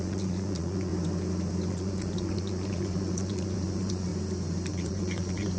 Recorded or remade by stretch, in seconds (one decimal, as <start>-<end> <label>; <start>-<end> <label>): 0.0-0.9 remade; 0.9-1.7 recorded; 1.7-4.1 remade; 4.1-4.7 recorded; 4.7-5.6 remade